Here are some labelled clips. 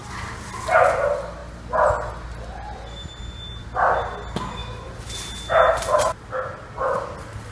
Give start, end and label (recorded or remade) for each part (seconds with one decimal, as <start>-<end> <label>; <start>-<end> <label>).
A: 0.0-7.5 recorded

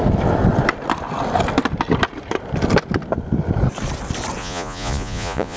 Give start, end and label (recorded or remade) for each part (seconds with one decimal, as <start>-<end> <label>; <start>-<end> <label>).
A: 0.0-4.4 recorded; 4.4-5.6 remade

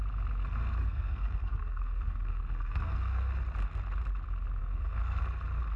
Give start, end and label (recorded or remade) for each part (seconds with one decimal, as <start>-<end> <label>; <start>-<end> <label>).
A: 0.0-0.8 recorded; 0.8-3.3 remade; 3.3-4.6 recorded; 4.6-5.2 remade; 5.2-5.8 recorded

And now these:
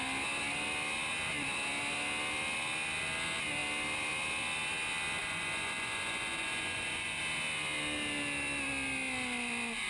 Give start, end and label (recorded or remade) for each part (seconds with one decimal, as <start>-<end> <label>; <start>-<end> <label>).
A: 0.0-5.2 recorded; 5.2-7.2 remade; 7.2-9.9 recorded

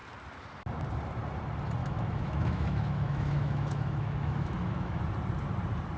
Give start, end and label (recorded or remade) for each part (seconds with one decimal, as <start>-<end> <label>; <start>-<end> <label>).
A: 0.0-1.8 recorded; 1.8-5.0 remade; 5.0-6.0 recorded